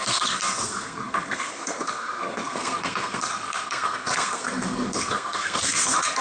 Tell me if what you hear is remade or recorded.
remade